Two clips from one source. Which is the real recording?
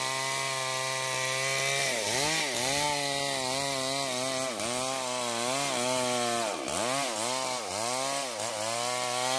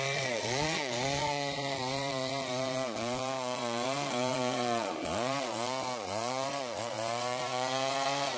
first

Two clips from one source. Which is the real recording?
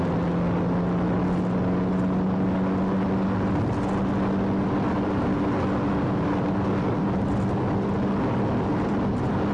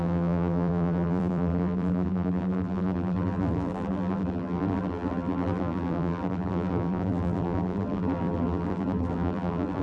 first